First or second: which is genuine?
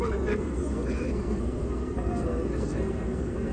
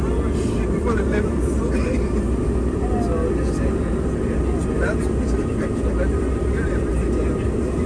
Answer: second